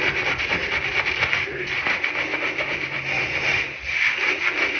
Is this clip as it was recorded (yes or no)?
yes